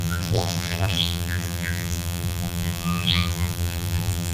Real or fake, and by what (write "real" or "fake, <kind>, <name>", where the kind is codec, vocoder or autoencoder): fake, vocoder, BigVGAN v2